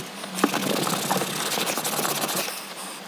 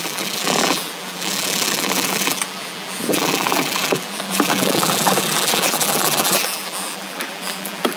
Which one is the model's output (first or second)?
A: second